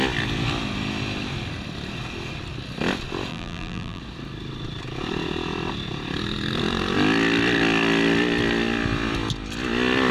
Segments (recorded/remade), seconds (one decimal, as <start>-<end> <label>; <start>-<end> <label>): 0.0-3.3 recorded; 3.3-4.0 remade; 4.0-10.1 recorded